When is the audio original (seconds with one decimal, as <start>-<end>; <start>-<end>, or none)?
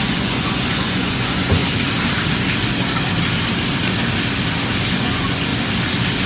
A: 1.6-4.9; 5.5-6.3